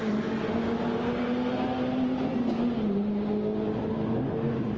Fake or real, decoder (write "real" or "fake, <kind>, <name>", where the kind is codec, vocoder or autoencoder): real